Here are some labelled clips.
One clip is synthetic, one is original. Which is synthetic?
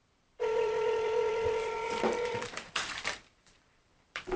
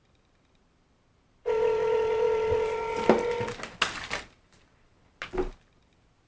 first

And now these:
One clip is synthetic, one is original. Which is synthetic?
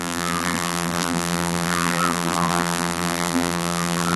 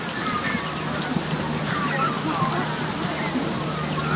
first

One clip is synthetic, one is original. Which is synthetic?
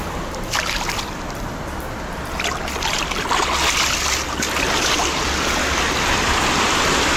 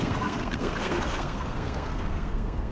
second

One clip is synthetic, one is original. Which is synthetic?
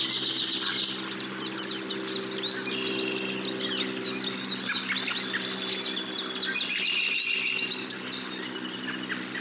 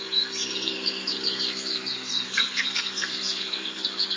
second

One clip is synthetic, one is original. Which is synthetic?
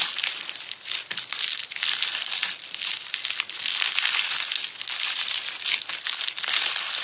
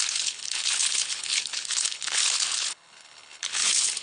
second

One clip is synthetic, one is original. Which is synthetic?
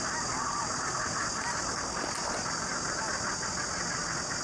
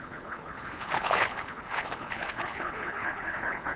second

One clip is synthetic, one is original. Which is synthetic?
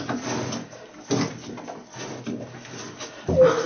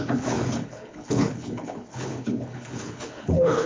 second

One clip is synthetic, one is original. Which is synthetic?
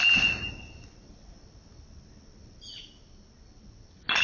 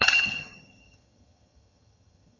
second